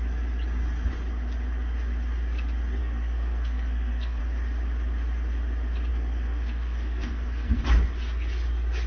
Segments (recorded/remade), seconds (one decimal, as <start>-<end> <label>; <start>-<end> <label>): 0.0-2.8 recorded; 2.8-4.2 remade; 4.2-5.9 recorded; 5.9-7.6 remade; 7.6-8.9 recorded